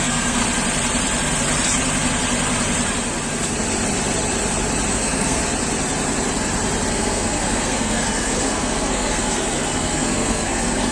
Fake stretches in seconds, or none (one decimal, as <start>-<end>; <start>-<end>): 0.0-0.4; 4.9-5.4; 6.9-10.9